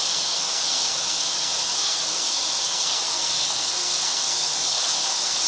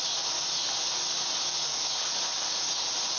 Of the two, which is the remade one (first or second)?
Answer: first